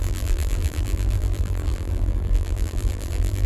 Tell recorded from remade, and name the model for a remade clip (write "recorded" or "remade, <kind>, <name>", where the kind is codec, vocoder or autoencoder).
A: remade, vocoder, BigVGAN v2